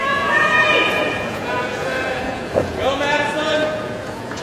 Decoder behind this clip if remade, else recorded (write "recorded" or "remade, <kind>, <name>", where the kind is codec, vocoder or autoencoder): remade, vocoder, Vocos